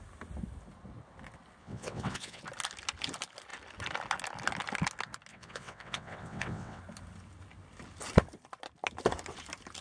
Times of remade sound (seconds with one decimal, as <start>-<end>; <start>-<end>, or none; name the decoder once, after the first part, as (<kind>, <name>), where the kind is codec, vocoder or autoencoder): 1.6-2.4 (vocoder, WaveNeXt); 5.3-6.8